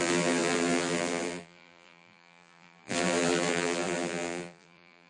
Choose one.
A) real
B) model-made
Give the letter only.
B